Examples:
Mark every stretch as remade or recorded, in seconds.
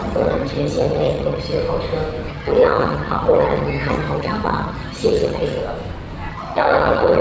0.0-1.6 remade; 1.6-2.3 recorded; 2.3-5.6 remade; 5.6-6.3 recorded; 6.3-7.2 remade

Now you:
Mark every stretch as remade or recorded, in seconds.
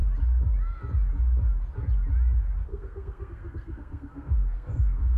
0.0-2.7 recorded; 2.7-5.2 remade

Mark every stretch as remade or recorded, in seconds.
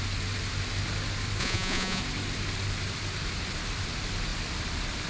0.0-1.4 recorded; 1.4-2.0 remade; 2.0-5.1 recorded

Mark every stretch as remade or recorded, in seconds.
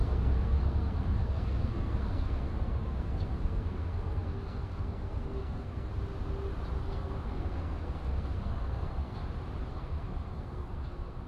0.0-5.9 remade; 5.9-6.8 recorded; 6.8-9.2 remade; 9.2-9.7 recorded; 9.7-11.3 remade